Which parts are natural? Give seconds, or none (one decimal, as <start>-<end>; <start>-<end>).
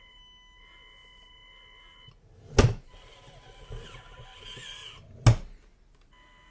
0.0-6.5